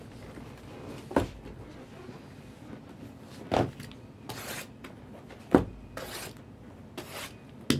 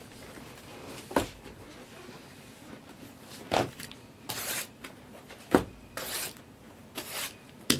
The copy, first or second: second